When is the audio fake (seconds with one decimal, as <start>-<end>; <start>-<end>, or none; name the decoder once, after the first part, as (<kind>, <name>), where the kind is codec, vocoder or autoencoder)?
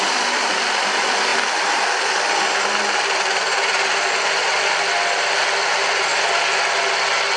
none